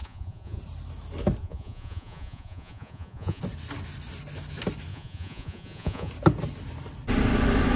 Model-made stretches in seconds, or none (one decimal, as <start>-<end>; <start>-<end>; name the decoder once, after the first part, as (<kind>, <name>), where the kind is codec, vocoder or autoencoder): 0.0-0.6 (vocoder, Vocos); 1.4-3.4; 4.9-6.1